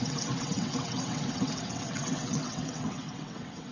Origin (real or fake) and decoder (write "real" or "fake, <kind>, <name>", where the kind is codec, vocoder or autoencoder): fake, vocoder, WaveNeXt